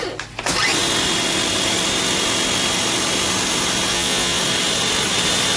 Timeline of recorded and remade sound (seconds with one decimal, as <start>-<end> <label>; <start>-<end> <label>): 0.0-3.9 recorded; 3.9-4.4 remade; 4.4-5.6 recorded